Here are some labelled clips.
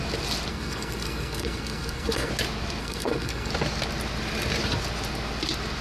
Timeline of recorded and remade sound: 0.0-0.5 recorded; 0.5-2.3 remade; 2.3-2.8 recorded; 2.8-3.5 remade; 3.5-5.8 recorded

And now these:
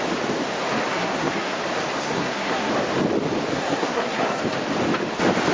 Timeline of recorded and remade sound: 0.0-0.9 recorded; 0.9-1.6 remade; 1.6-2.0 recorded; 2.0-2.7 remade; 2.7-3.5 recorded; 3.5-4.4 remade; 4.4-5.5 recorded

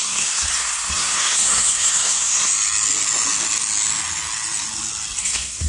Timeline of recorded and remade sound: 0.0-2.5 remade; 2.5-5.2 recorded; 5.2-5.7 remade